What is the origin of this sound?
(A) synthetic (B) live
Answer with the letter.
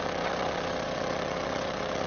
A